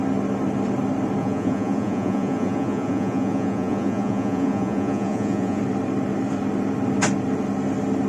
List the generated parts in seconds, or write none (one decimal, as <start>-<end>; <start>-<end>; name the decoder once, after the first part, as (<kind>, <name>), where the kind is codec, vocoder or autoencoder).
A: 1.2-5.6 (vocoder, Vocos)